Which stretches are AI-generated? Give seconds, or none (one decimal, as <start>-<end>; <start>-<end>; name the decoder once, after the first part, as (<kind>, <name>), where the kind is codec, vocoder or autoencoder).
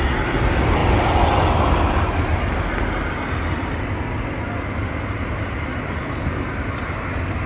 none